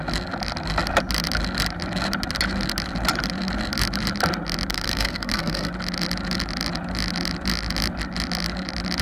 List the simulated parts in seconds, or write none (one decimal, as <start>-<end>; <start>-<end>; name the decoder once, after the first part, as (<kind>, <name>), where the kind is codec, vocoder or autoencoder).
4.7-5.7 (codec, SNAC)